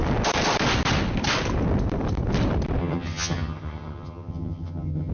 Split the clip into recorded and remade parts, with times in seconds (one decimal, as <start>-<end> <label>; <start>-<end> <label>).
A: 0.0-2.8 recorded; 2.8-5.1 remade